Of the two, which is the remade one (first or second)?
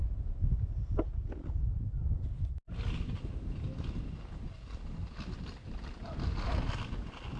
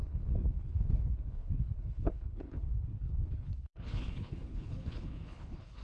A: second